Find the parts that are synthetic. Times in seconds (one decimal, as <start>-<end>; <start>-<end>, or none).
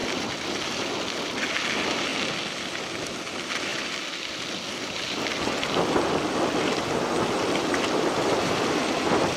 0.0-0.6